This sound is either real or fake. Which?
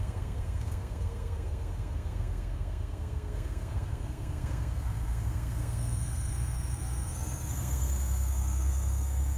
fake